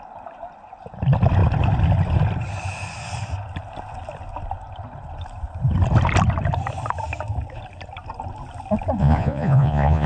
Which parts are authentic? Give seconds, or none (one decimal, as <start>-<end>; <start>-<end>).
0.0-9.0